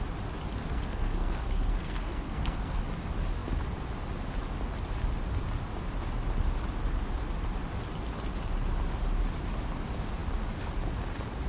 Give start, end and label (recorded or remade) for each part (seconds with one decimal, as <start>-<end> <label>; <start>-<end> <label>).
0.0-0.6 recorded; 0.6-2.8 remade; 2.8-11.5 recorded